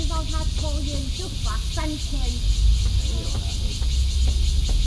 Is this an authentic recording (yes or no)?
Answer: yes